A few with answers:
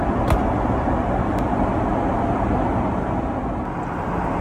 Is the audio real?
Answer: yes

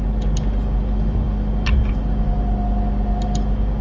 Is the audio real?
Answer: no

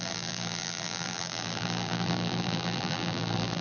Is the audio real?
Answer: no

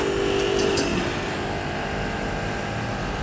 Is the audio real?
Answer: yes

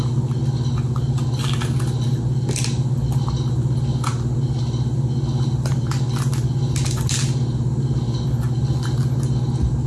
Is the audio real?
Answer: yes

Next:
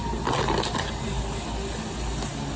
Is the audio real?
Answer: yes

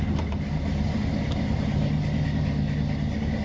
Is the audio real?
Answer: yes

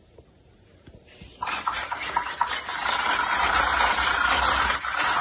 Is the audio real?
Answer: no